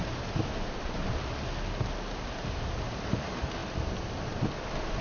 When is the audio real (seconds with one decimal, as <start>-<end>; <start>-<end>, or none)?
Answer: 1.0-2.1; 3.6-5.0